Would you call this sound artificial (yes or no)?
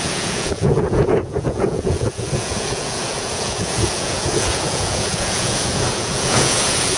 yes